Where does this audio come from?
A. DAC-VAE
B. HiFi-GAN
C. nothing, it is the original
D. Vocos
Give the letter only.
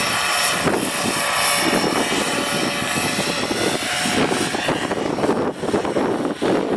C